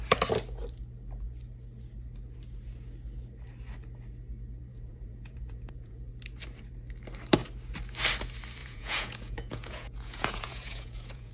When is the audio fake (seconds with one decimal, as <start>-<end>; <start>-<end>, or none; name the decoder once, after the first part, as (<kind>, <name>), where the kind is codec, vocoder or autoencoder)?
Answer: 4.7-6.1 (vocoder, Vocos); 8.6-11.3